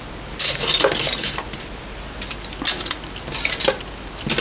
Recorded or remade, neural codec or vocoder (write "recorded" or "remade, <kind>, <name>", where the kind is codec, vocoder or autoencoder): recorded